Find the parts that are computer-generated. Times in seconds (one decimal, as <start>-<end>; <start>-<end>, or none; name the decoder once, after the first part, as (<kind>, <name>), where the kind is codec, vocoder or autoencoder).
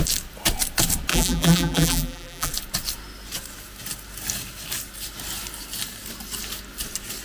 1.1-2.5 (vocoder, BigVGAN v2)